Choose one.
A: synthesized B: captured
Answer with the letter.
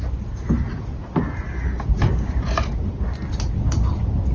B